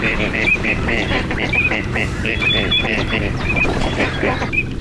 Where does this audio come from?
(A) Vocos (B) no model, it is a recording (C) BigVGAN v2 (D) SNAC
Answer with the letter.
C